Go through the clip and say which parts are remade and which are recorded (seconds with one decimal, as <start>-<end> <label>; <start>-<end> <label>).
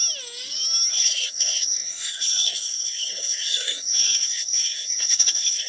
0.0-0.9 recorded; 0.9-5.7 remade